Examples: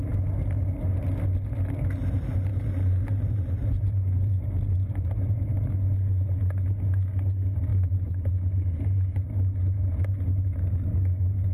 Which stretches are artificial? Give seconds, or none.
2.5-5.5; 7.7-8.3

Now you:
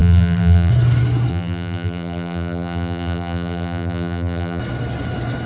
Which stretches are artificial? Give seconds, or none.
0.0-0.7; 1.3-4.6